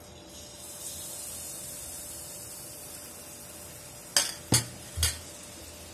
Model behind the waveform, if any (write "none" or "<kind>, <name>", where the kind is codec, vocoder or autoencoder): none